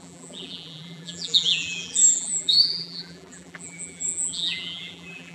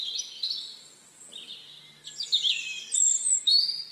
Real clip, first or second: second